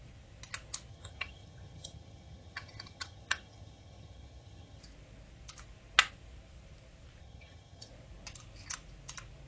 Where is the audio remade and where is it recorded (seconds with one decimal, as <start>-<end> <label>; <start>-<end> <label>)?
0.0-0.9 recorded; 0.9-4.8 remade; 4.8-7.2 recorded; 7.2-7.9 remade; 7.9-9.5 recorded